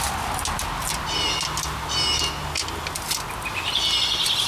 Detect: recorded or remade recorded